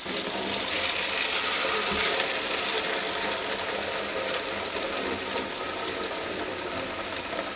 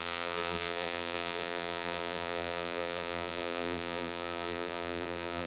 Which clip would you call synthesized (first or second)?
second